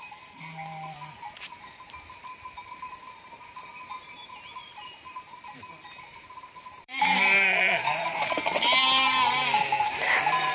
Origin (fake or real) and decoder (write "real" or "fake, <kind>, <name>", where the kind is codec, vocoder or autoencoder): fake, vocoder, BigVGAN v2